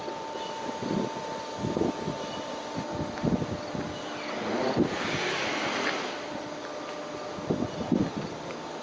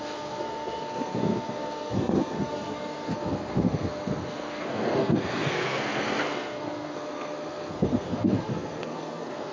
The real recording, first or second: first